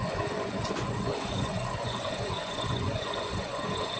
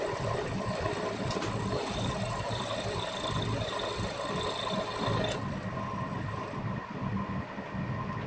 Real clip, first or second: second